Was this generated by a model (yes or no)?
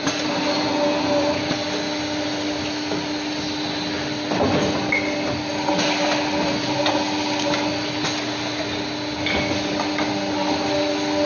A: no